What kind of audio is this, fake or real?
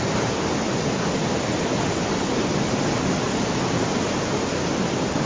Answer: real